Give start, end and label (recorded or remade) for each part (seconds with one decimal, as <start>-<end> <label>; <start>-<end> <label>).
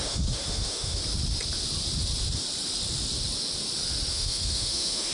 0.0-1.0 remade; 1.0-4.1 recorded; 4.1-5.1 remade